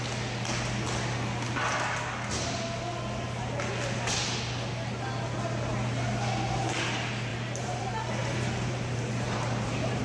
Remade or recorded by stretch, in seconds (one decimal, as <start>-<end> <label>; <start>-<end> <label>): 0.0-7.3 recorded; 7.3-7.8 remade; 7.8-8.2 recorded; 8.2-10.0 remade